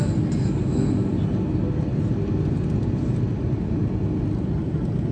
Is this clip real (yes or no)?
yes